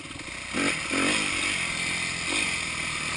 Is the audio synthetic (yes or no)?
no